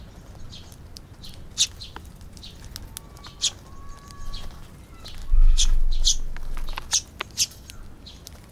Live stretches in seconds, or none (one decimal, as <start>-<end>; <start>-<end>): 0.0-5.2; 5.8-8.5